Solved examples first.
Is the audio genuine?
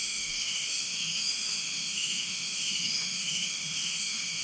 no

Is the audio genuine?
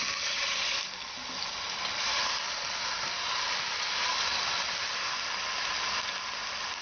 yes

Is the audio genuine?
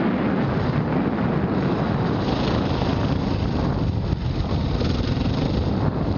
yes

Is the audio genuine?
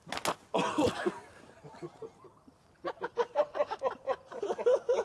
yes